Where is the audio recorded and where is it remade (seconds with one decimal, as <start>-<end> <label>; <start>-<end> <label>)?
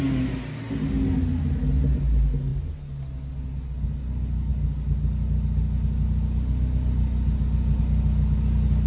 0.0-8.9 recorded